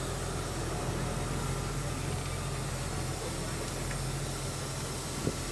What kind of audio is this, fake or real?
real